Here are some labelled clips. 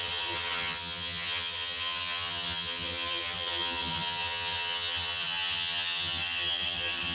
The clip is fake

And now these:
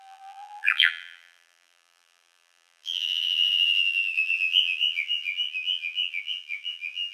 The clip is fake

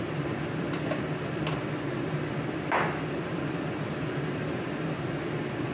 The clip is fake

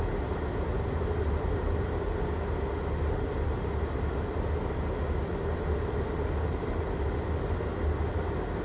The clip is real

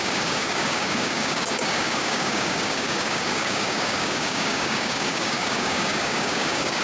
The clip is fake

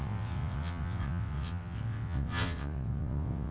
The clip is fake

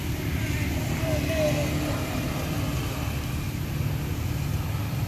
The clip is real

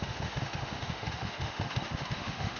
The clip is fake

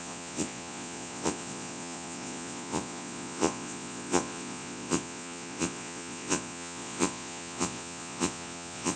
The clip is fake